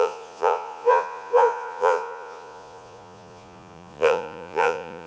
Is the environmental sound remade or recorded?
remade